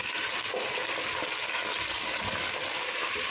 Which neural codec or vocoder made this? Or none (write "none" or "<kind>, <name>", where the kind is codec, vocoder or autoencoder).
none